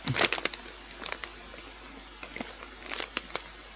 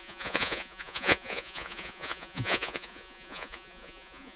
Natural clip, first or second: first